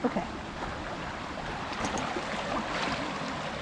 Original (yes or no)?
yes